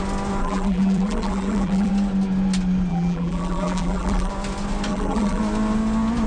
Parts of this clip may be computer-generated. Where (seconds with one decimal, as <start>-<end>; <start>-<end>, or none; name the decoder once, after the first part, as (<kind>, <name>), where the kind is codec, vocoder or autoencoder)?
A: 0.4-1.9 (vocoder, BigVGAN v2); 2.9-4.3; 4.9-5.4